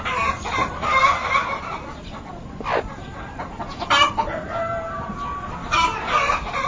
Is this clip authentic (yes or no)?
yes